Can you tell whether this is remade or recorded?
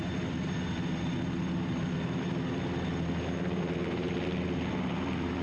recorded